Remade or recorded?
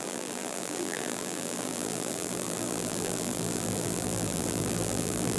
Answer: remade